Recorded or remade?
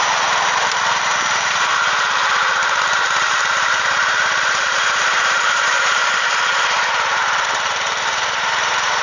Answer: remade